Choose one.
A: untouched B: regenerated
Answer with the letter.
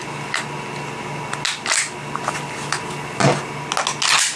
A